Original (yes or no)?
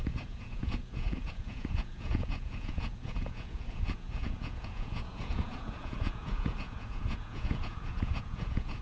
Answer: no